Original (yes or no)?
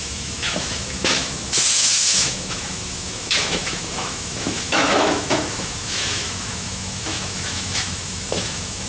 no